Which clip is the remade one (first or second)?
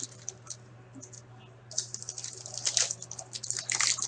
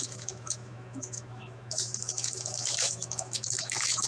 second